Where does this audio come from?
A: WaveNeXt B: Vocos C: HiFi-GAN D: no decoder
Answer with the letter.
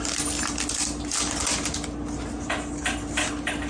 D